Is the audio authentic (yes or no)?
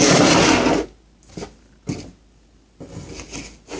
yes